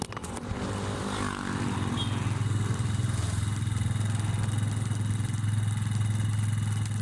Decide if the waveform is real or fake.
real